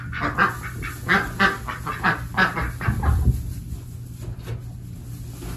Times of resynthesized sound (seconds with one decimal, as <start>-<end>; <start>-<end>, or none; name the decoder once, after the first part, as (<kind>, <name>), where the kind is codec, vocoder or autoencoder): none